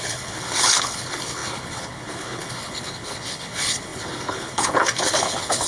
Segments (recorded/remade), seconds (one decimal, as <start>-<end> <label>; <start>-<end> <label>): 0.0-5.7 remade